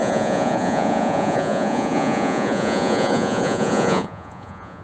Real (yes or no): no